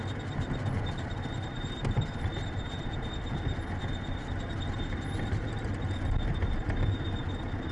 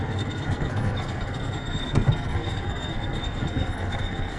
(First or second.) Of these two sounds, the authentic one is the first